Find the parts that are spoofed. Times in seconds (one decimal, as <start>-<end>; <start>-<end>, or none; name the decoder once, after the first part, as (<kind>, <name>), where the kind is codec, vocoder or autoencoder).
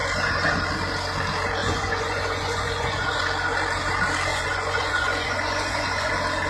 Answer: 1.6-3.2 (vocoder, Vocos); 4.3-6.1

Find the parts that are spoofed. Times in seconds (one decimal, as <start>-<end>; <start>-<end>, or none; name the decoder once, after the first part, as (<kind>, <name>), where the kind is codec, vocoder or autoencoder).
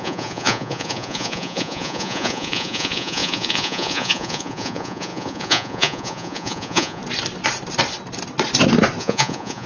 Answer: 0.0-7.0 (vocoder, Vocos); 9.0-9.7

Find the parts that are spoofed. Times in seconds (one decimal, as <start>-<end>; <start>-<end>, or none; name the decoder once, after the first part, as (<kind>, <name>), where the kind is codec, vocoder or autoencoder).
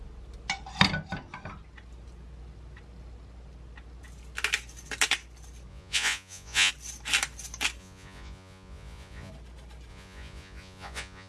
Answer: 5.7-6.7 (vocoder, Vocos); 7.8-9.3; 9.9-11.3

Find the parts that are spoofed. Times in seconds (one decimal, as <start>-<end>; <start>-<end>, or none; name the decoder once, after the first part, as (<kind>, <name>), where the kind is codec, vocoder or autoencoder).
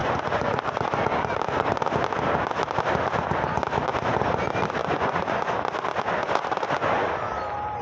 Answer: 0.0-0.9 (vocoder, Vocos); 4.8-5.5; 6.2-7.1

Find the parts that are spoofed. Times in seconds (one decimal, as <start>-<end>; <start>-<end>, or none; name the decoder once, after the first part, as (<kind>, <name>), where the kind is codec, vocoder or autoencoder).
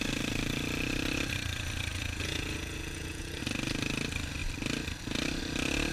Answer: 1.9-3.4 (vocoder, Vocos)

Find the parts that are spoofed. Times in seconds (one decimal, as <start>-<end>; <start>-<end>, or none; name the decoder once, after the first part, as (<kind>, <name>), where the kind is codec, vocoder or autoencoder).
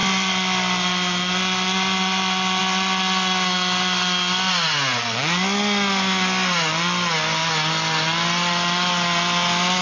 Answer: none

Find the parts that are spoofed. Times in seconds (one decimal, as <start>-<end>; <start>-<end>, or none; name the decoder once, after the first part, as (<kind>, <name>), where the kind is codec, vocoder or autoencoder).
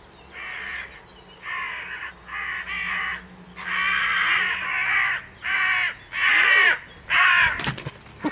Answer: none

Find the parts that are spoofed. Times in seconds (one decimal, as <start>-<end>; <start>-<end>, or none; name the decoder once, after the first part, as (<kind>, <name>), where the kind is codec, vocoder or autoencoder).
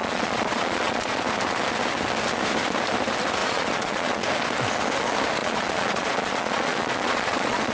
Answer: 0.0-1.2 (vocoder, Vocos); 3.4-4.2; 5.4-7.7